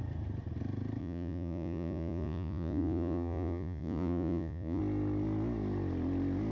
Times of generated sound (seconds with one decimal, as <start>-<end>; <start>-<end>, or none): 1.0-4.8